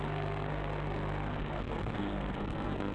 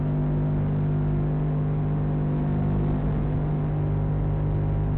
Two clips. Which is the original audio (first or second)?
second